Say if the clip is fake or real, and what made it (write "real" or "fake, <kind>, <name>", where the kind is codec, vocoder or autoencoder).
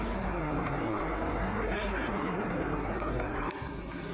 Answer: fake, codec, SNAC